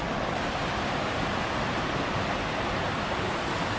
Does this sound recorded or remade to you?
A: recorded